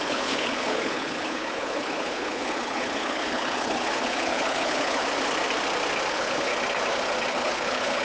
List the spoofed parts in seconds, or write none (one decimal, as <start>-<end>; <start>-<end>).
0.0-5.0; 6.1-6.5; 7.3-8.0